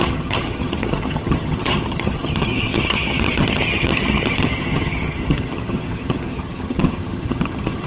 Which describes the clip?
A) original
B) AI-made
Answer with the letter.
B